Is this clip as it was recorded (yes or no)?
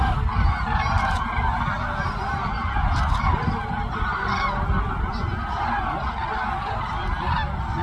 yes